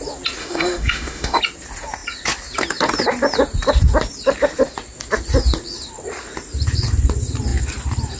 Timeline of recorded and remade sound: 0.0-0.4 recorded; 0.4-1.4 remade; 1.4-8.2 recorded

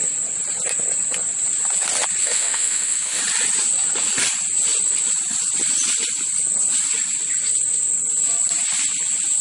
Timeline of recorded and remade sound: 0.0-2.2 recorded; 2.2-3.2 remade; 3.2-9.4 recorded

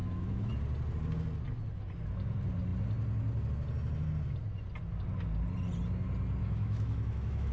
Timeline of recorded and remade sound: 0.0-0.5 remade; 0.5-6.4 recorded; 6.4-7.5 remade

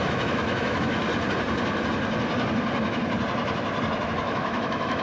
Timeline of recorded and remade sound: 0.0-1.1 remade; 1.1-4.1 recorded; 4.1-5.0 remade

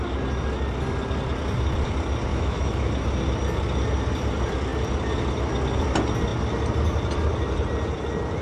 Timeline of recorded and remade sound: 0.0-2.3 recorded; 2.3-2.9 remade; 2.9-8.4 recorded

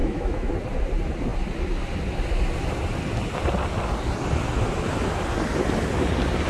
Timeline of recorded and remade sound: 0.0-0.5 remade; 0.5-6.5 recorded

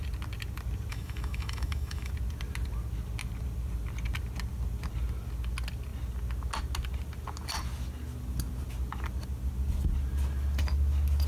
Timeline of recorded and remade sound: 0.0-0.9 recorded; 0.9-2.1 remade; 2.1-11.3 recorded